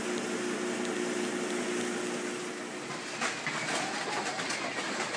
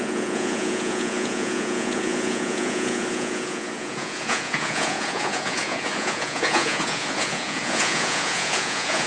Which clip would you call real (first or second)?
first